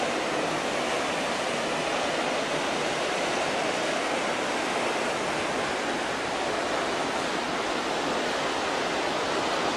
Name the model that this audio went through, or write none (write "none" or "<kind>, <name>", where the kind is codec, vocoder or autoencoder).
none